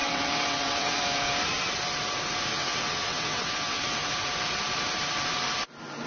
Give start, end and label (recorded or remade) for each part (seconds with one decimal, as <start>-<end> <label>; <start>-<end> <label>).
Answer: 0.0-1.0 remade; 1.0-2.5 recorded; 2.5-4.1 remade; 4.1-6.1 recorded